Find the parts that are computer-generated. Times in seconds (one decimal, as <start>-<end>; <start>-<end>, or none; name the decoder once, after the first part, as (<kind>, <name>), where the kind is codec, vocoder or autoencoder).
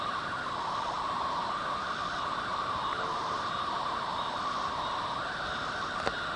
2.5-4.8 (vocoder, BigVGAN v2)